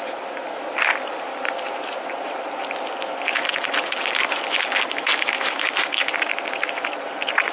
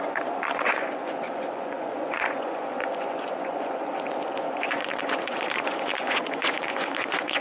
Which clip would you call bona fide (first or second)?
first